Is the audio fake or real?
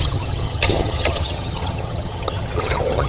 fake